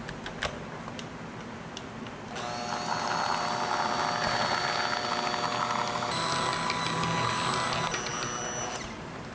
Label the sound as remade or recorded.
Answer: recorded